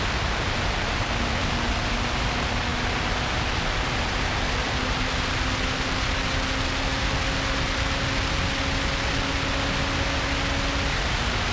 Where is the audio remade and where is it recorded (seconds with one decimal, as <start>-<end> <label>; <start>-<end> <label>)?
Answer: 0.0-11.5 recorded